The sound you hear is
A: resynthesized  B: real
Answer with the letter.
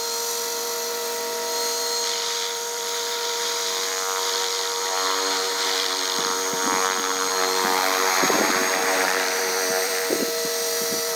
A